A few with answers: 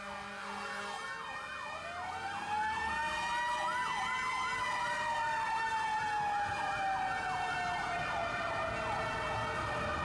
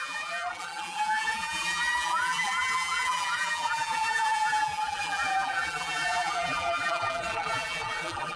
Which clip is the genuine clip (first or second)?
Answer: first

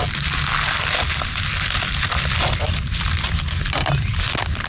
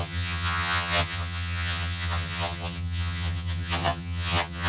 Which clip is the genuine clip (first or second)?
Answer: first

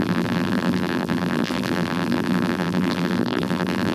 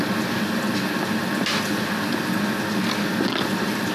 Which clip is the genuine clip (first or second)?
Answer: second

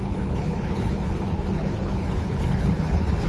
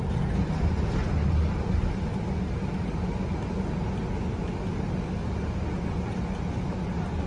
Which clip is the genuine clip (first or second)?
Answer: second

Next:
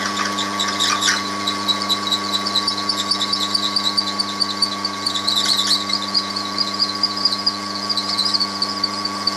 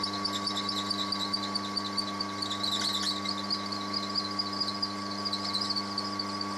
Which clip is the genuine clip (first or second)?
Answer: second